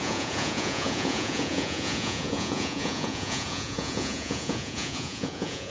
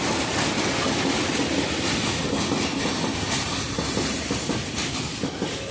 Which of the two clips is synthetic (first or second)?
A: first